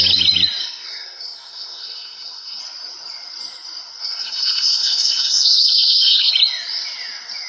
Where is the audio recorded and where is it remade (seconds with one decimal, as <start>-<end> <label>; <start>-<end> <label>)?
0.0-0.6 recorded; 0.6-2.6 remade; 2.6-4.0 recorded; 4.0-6.3 remade; 6.3-7.5 recorded